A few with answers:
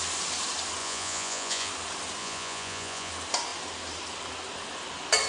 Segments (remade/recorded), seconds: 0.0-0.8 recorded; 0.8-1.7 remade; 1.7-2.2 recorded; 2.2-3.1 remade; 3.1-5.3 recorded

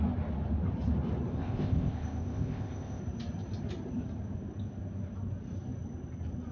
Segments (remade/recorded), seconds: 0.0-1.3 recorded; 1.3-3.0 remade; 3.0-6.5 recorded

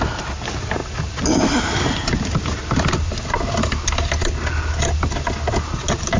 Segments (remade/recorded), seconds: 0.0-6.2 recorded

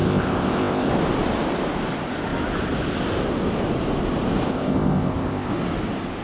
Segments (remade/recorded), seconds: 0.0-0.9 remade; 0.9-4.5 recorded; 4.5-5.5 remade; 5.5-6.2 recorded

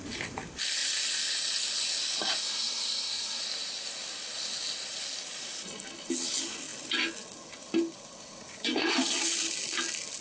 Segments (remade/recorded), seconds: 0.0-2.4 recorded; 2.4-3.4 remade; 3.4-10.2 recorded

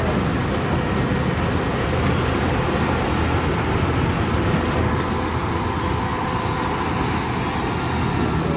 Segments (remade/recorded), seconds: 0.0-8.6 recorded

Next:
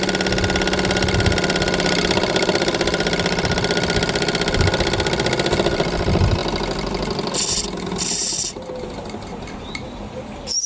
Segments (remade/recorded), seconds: 0.0-10.7 recorded

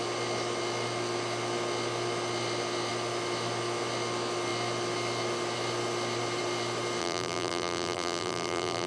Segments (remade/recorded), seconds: 0.0-7.0 recorded; 7.0-8.9 remade